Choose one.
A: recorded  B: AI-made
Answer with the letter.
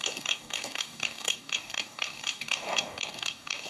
B